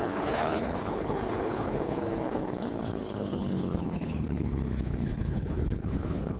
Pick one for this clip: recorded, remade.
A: remade